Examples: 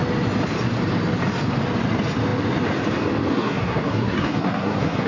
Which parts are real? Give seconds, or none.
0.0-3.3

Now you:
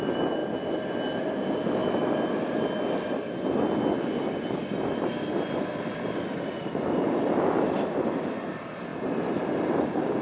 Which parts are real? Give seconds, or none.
0.0-0.4; 1.2-10.2

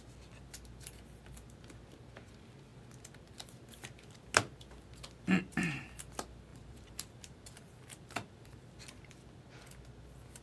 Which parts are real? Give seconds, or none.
0.0-6.5; 8.8-10.4

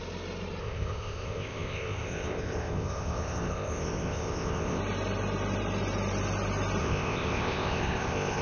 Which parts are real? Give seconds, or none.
0.0-0.6; 4.8-6.8